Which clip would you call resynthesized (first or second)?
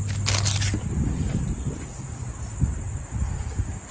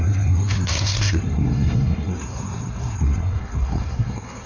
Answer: second